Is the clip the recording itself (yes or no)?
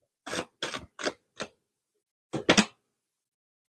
yes